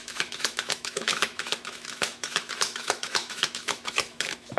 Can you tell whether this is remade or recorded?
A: remade